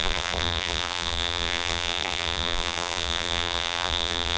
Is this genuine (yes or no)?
no